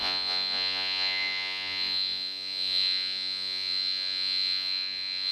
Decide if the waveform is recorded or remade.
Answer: remade